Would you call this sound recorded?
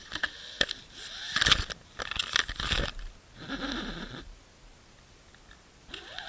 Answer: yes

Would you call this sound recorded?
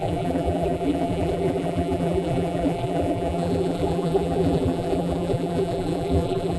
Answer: no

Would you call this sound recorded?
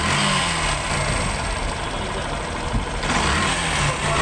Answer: yes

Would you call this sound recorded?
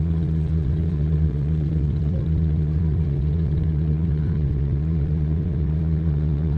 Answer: no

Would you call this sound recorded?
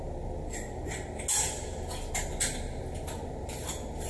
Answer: yes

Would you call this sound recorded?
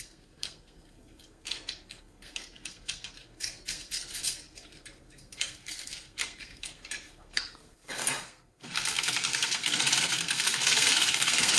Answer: no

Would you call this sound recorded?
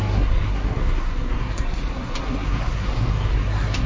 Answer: no